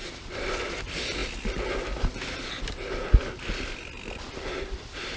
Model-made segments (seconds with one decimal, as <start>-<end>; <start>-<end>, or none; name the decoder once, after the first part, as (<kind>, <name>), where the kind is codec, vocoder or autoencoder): none

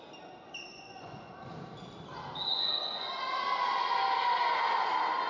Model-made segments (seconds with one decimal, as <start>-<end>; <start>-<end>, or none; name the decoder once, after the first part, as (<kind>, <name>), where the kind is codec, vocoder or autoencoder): 0.7-1.3 (vocoder, Vocos); 2.5-3.1